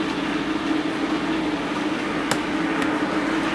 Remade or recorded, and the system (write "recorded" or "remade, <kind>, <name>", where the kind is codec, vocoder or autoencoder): recorded